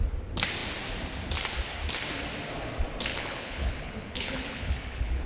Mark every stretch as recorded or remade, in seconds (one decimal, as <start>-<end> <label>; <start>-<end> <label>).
0.0-3.1 recorded; 3.1-5.3 remade